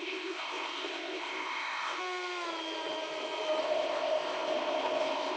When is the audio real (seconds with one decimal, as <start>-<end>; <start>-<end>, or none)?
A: 2.0-3.6